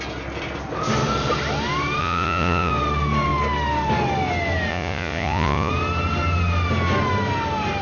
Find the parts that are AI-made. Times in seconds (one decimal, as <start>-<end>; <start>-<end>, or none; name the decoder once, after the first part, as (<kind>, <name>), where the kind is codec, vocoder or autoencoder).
2.0-2.7 (vocoder, Vocos); 4.7-5.7